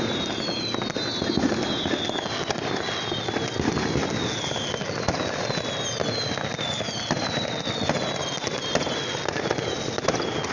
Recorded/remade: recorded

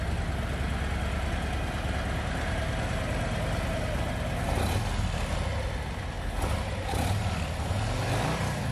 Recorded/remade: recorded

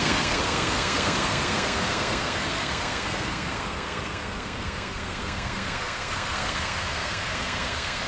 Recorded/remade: remade